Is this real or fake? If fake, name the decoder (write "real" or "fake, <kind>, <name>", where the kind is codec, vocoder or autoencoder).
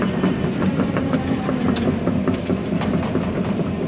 fake, vocoder, BigVGAN v2